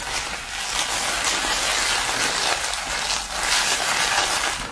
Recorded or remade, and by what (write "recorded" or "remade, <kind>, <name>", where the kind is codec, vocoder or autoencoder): recorded